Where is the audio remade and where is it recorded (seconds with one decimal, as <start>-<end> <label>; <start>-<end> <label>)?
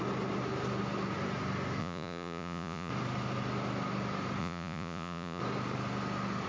0.0-1.8 recorded; 1.8-2.9 remade; 2.9-4.4 recorded; 4.4-5.4 remade; 5.4-6.5 recorded